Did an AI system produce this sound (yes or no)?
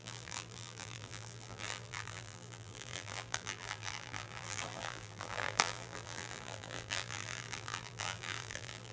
yes